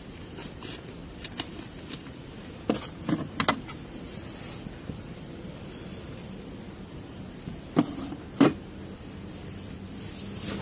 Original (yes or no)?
yes